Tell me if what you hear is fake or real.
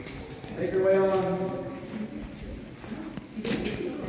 real